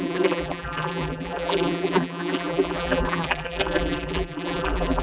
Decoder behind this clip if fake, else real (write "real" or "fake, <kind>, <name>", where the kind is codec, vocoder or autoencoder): fake, vocoder, BigVGAN v2